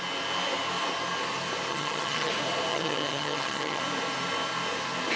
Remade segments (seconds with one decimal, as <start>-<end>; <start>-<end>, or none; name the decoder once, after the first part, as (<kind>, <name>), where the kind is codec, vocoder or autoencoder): 1.7-2.3 (vocoder, HiFi-GAN); 2.7-3.8